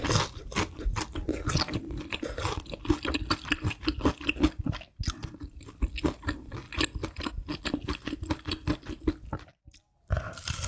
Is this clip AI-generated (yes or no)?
no